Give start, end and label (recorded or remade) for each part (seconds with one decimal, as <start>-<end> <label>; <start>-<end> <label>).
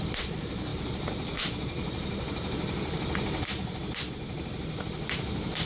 0.0-5.7 remade